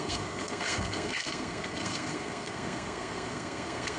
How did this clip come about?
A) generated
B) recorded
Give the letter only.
A